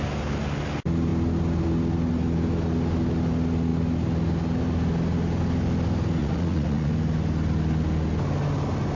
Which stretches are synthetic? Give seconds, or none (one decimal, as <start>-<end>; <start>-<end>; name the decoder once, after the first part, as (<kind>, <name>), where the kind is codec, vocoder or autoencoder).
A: 6.2-6.9 (vocoder, Vocos)